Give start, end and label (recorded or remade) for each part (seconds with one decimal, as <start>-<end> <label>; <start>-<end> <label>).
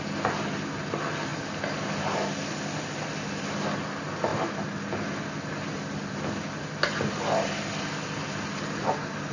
0.0-9.3 recorded